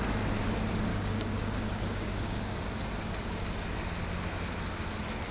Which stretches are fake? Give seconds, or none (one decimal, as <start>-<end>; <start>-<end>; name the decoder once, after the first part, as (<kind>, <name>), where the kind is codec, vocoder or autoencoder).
0.9-2.6 (codec, DAC)